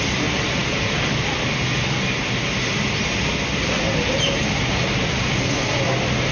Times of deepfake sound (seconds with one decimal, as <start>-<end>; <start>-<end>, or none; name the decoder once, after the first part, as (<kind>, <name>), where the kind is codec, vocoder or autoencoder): none